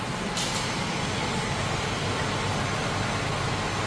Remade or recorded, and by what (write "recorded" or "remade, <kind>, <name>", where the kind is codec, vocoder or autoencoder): recorded